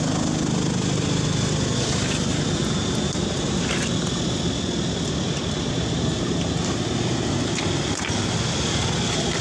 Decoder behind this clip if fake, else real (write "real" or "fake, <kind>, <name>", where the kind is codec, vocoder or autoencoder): real